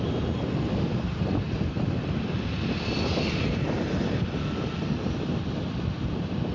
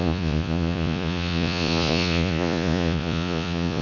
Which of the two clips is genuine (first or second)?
first